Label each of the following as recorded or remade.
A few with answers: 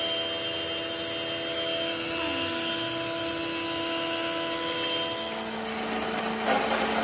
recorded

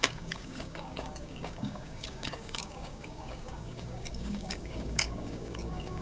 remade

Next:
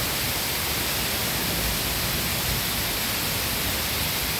recorded